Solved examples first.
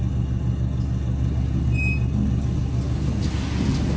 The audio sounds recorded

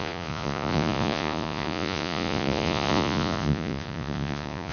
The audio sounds remade